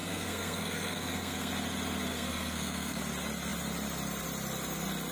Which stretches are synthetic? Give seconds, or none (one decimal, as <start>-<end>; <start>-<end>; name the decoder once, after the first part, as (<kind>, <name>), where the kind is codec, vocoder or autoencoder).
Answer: 0.0-1.5 (codec, SNAC); 2.1-3.0